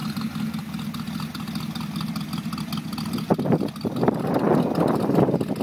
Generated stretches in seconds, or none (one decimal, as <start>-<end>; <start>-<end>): none